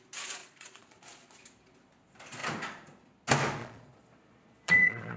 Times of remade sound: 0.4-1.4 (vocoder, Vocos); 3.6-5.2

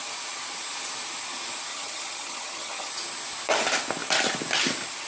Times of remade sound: 1.7-2.9 (vocoder, HiFi-GAN)

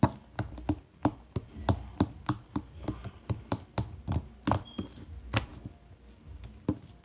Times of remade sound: none

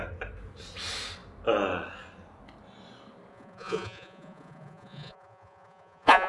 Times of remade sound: 3.3-6.3 (vocoder, Vocos)

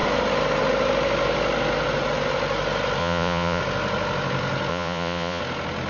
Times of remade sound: 3.0-3.6 (vocoder, Vocos); 4.7-5.4

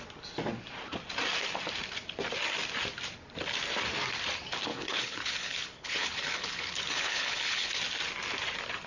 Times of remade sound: 4.7-7.8 (codec, HILCodec)